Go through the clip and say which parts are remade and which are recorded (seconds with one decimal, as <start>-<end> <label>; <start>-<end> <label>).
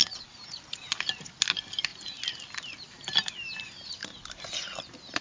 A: 0.0-0.6 remade; 0.6-5.2 recorded